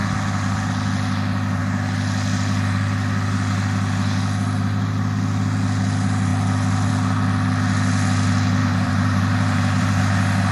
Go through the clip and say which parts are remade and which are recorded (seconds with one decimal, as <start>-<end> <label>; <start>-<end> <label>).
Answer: 0.0-8.6 recorded; 8.6-10.0 remade; 10.0-10.5 recorded